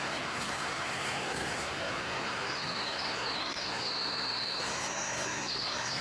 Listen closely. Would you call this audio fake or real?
fake